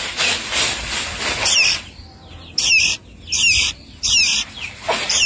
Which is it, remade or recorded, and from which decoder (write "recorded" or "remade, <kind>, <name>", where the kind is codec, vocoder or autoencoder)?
recorded